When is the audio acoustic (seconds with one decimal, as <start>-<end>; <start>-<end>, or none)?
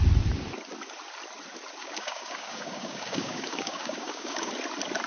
0.0-1.8; 4.5-5.1